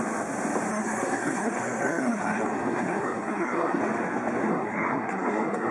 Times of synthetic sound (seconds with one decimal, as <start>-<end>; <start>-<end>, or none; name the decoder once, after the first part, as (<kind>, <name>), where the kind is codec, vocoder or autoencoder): 0.7-3.8 (codec, SNAC); 4.5-5.7